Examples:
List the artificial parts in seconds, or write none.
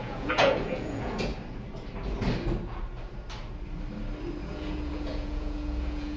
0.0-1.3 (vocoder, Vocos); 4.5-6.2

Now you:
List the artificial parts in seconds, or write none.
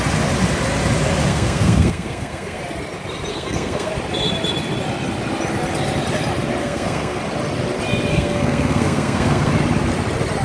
1.3-2.6 (codec, SNAC); 3.3-3.9; 6.6-7.2; 8.1-9.5